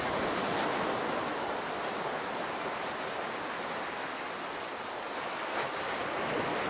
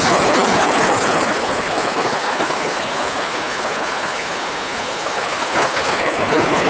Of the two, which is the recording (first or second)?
first